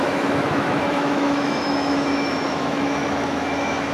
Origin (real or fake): fake